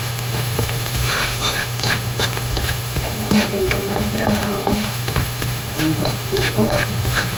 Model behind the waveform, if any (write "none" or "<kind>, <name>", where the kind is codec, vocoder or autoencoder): autoencoder, DAC-VAE